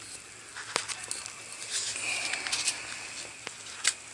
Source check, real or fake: real